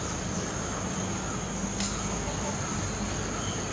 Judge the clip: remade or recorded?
recorded